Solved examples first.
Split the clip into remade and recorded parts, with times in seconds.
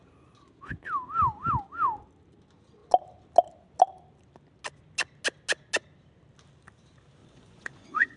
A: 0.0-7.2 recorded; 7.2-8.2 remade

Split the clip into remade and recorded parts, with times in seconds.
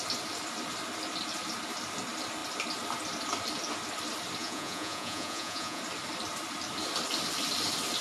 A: 0.0-4.4 recorded; 4.4-5.8 remade; 5.8-8.0 recorded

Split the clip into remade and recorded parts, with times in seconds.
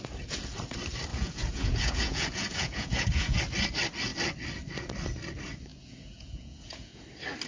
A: 0.0-1.1 recorded; 1.1-3.4 remade; 3.4-5.7 recorded; 5.7-7.0 remade; 7.0-7.5 recorded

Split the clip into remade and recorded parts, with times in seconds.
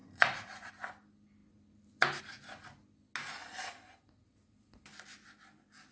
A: 0.0-0.7 remade; 0.7-5.9 recorded